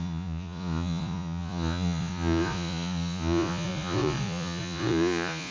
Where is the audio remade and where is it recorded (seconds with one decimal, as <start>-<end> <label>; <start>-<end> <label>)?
0.0-5.5 remade